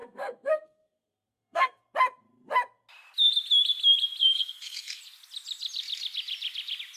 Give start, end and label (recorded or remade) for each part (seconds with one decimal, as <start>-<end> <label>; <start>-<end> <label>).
0.0-1.8 remade; 1.8-4.2 recorded; 4.2-5.0 remade; 5.0-7.0 recorded